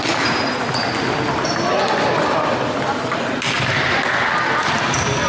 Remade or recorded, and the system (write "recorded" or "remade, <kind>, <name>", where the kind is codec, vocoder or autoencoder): recorded